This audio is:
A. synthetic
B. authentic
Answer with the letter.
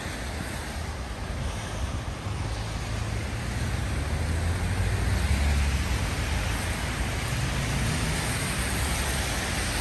B